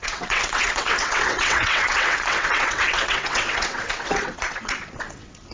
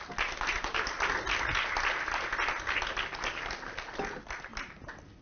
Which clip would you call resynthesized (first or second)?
first